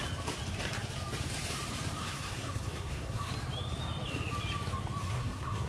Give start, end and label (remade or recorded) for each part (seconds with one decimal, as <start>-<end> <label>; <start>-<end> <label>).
0.0-2.0 recorded; 2.0-3.3 remade; 3.3-5.0 recorded; 5.0-5.7 remade